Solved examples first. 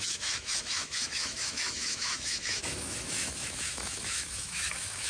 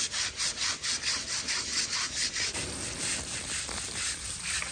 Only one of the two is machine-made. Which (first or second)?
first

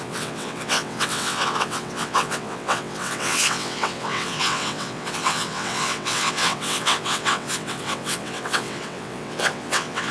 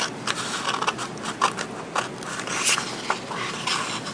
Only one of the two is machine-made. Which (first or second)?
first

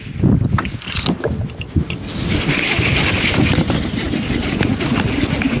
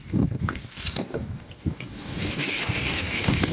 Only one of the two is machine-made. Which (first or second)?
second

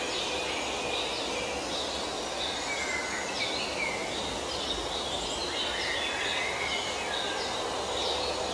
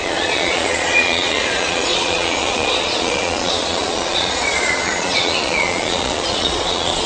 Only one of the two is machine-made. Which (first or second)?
second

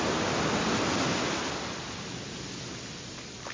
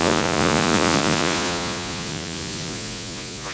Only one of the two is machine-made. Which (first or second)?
second